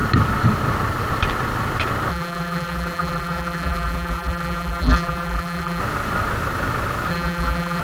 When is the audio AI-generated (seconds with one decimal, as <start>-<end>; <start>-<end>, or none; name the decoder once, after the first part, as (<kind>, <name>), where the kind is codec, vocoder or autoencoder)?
2.1-5.8 (vocoder, BigVGAN v2); 7.1-7.8